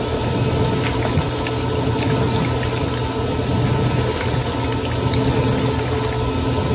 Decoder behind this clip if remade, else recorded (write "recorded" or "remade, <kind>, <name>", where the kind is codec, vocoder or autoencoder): recorded